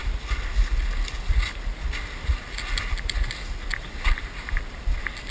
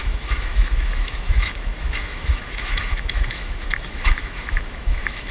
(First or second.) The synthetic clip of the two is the second